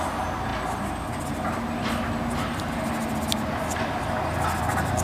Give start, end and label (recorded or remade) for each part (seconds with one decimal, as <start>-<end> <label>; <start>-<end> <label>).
0.0-5.0 recorded